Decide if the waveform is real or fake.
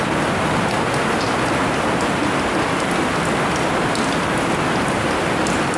real